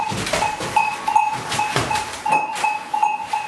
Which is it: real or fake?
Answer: real